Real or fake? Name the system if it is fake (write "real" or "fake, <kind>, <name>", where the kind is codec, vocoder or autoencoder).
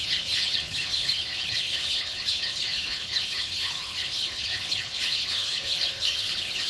fake, codec, HILCodec